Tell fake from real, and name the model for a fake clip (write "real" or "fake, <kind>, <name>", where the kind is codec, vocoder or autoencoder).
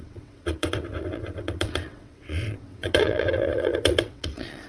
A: fake, vocoder, WaveNeXt